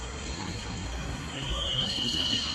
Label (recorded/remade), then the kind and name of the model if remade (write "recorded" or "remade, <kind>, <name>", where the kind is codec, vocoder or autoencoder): remade, codec, SNAC